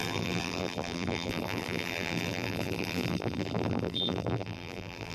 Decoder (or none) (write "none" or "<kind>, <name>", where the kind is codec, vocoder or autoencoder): vocoder, BigVGAN v2